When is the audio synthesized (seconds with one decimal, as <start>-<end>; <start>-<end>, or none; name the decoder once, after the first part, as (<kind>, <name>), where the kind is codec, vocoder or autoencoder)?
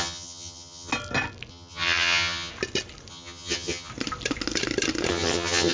0.0-0.9 (vocoder, HiFi-GAN); 1.5-2.5; 3.1-3.9; 5.1-5.7